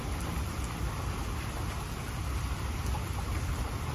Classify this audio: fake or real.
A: real